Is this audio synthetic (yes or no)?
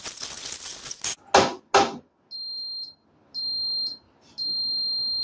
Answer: no